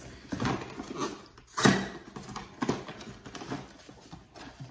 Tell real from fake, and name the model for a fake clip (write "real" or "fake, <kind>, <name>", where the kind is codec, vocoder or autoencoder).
real